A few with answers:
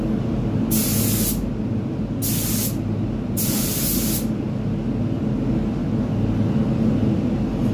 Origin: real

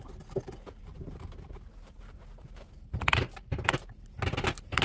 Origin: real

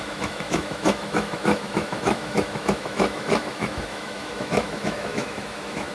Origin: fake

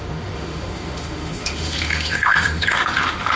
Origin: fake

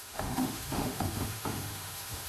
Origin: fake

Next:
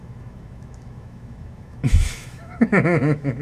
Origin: fake